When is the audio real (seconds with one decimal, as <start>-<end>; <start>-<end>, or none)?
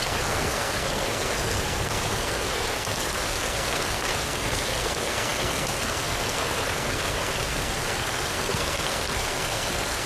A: none